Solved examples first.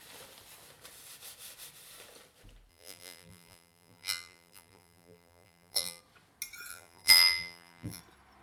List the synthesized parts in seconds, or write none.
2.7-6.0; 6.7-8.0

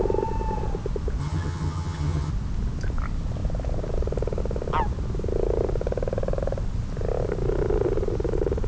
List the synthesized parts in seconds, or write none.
1.2-2.3

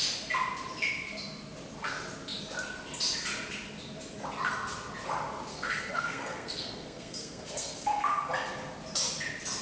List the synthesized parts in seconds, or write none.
5.5-8.3

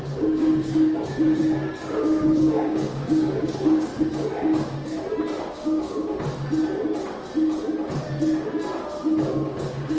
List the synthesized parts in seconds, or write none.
0.0-3.9; 5.5-6.1; 9.2-10.0

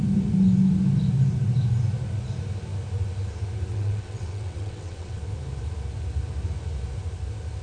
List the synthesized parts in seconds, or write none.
3.7-5.2